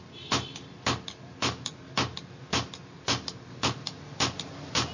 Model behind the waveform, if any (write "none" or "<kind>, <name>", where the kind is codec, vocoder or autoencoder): none